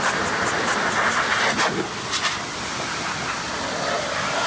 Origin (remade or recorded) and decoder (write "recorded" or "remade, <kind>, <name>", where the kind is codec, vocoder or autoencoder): recorded